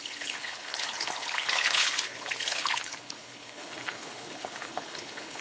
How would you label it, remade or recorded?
remade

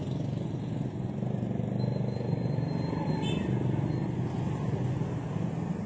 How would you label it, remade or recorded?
recorded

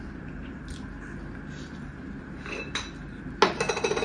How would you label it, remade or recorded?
recorded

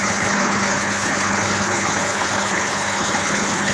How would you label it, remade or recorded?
remade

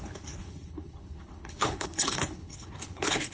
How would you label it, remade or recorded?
remade